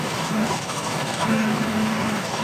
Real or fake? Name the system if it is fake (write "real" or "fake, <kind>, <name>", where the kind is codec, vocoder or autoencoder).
fake, codec, DAC